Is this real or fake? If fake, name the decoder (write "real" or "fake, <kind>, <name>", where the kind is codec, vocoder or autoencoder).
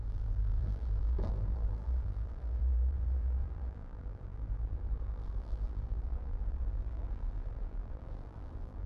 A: fake, vocoder, BigVGAN v2